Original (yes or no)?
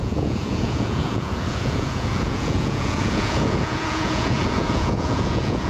no